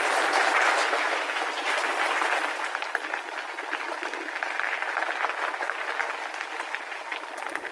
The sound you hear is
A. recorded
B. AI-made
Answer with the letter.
A